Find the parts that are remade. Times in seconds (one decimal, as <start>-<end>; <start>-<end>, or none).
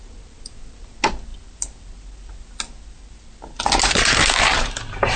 none